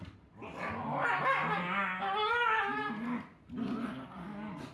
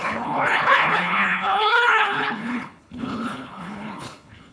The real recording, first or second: first